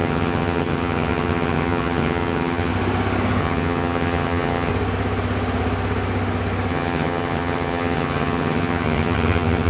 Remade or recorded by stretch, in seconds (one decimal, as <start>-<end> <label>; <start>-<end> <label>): 0.0-2.7 remade; 2.7-3.4 recorded; 3.4-4.7 remade; 4.7-6.7 recorded; 6.7-9.7 remade